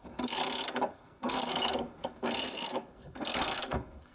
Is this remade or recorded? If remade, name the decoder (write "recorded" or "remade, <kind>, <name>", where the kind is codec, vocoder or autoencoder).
remade, codec, SNAC